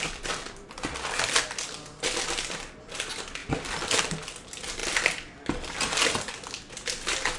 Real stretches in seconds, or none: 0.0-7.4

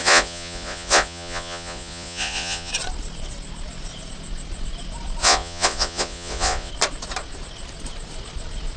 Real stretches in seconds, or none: 2.7-5.2; 6.7-8.8

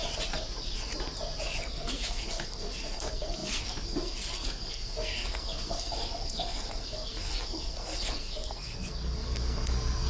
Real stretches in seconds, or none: 0.0-1.6